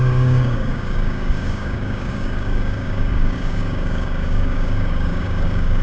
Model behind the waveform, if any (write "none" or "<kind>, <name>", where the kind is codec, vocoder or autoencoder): codec, DAC